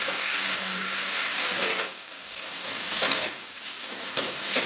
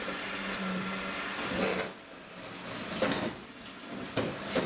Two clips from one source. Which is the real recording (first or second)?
second